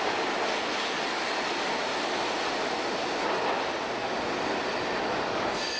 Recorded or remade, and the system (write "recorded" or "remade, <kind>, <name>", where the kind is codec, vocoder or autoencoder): recorded